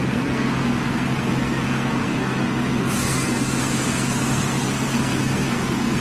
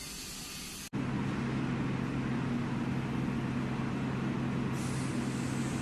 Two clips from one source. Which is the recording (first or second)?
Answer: second